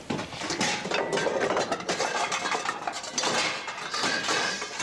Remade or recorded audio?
recorded